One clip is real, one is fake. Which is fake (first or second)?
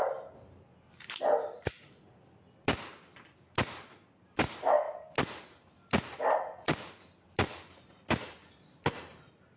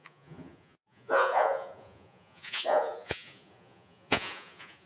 second